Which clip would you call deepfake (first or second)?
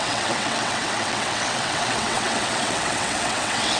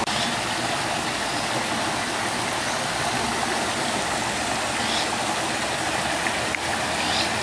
first